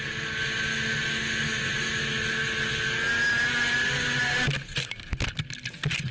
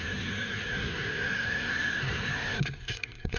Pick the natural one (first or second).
first